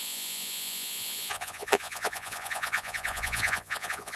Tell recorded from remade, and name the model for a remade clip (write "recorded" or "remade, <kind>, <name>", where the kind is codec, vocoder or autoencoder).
remade, vocoder, Vocos